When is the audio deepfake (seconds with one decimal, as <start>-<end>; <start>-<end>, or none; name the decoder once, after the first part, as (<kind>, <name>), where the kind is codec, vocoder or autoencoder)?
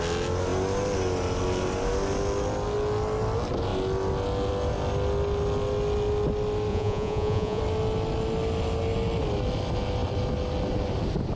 6.7-7.6 (vocoder, Vocos)